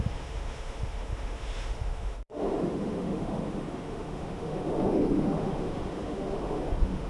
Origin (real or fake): fake